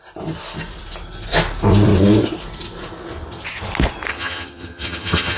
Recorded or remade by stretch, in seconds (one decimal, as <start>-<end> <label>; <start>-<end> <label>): 0.0-4.1 recorded; 4.1-5.4 remade